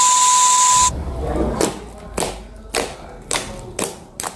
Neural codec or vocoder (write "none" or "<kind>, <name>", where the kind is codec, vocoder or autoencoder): none